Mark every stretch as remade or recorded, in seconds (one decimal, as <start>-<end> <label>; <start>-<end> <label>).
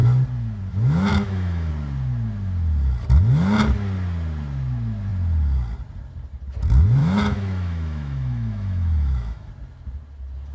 0.0-1.1 recorded; 1.1-1.7 remade; 1.7-7.0 recorded; 7.0-9.5 remade; 9.5-10.5 recorded